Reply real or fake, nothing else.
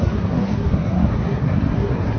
fake